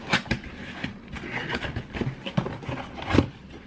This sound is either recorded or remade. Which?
recorded